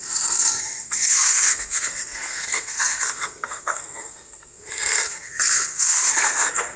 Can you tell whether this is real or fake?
fake